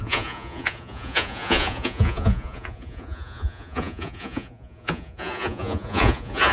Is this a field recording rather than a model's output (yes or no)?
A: no